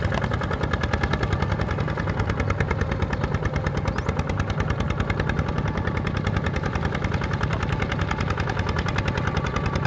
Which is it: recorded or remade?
recorded